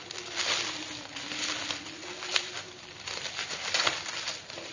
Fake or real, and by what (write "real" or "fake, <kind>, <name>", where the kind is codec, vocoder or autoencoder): real